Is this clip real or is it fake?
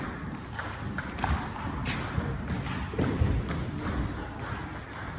real